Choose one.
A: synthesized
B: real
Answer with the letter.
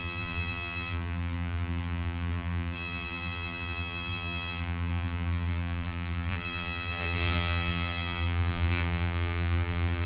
A